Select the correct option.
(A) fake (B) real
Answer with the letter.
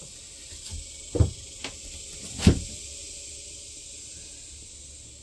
B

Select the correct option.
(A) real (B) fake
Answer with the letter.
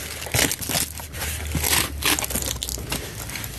A